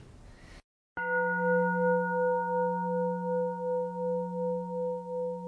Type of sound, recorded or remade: recorded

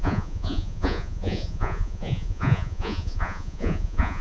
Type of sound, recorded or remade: remade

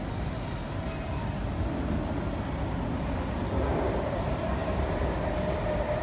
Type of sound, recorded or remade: recorded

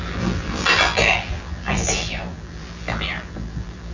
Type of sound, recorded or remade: remade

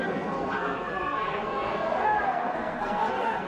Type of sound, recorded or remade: remade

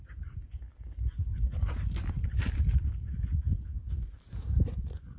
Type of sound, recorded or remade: recorded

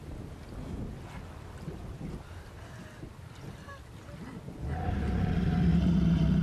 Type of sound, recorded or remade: recorded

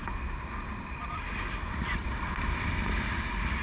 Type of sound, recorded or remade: recorded